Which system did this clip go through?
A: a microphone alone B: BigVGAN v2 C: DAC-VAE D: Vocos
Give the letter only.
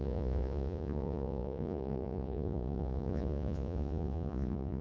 D